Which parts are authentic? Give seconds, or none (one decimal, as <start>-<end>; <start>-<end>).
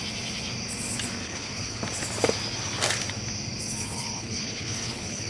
0.0-1.2; 1.8-3.8